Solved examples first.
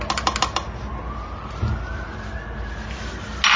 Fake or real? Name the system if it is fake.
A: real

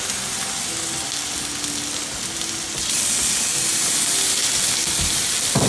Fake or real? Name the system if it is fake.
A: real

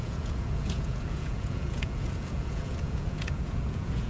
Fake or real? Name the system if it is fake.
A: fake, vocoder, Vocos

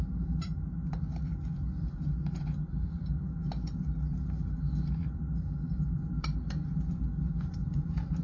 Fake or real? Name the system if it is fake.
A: real